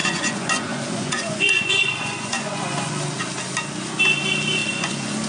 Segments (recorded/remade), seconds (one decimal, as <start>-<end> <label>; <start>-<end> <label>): 0.0-2.9 remade; 2.9-4.6 recorded; 4.6-5.3 remade